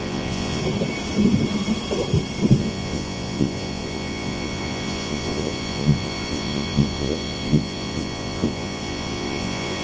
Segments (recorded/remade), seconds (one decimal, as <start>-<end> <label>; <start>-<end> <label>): 0.0-0.6 remade; 0.6-2.6 recorded; 2.6-9.8 remade